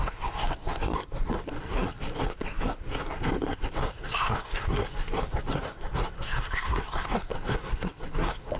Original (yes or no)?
no